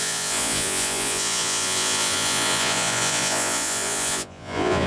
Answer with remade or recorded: remade